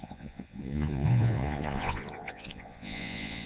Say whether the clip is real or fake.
fake